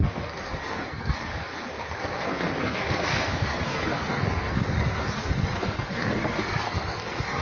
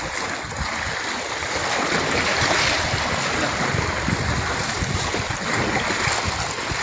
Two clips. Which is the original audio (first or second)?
second